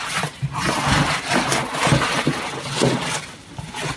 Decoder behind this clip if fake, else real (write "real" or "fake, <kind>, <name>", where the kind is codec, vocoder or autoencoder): real